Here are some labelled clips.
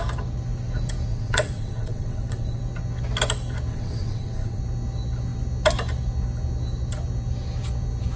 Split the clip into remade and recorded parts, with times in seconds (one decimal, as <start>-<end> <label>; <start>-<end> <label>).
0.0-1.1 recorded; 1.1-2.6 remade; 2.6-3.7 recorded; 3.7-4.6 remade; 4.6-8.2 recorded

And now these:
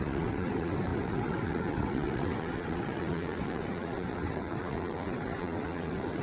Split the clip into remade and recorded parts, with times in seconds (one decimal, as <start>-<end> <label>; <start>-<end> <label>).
0.0-6.2 remade

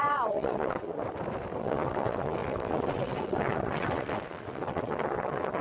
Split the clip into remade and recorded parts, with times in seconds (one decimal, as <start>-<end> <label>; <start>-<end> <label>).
0.0-1.0 remade; 1.0-1.6 recorded; 1.6-5.6 remade

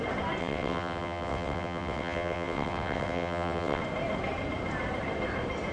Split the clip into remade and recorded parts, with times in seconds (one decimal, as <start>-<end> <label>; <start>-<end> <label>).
0.0-0.4 recorded; 0.4-3.8 remade; 3.8-5.7 recorded